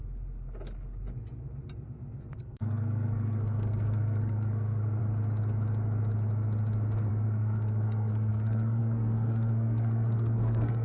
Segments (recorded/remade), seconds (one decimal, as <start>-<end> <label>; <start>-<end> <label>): 0.0-2.4 recorded; 2.4-5.0 remade; 5.0-7.1 recorded; 7.1-10.8 remade